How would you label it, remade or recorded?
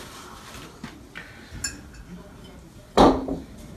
recorded